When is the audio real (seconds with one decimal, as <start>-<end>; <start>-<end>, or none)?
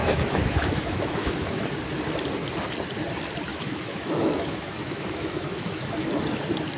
1.7-3.5; 6.1-6.8